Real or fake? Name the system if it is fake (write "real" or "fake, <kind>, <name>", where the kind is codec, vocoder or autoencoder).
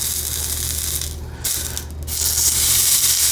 real